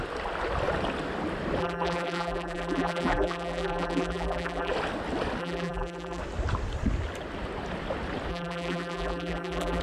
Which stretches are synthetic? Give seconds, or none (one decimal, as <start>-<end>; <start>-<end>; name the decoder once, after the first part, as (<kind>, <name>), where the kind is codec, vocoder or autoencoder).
1.6-4.7 (vocoder, BigVGAN v2); 5.4-6.2; 8.3-9.8